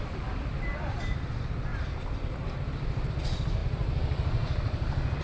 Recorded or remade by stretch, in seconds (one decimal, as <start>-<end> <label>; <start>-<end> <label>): 0.0-3.6 remade; 3.6-5.2 recorded